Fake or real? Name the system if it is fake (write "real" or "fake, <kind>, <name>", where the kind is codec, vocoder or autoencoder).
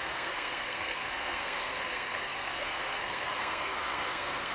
fake, codec, SNAC